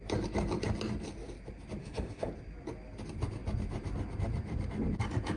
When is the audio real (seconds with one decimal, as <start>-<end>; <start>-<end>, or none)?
0.0-1.8; 2.3-5.4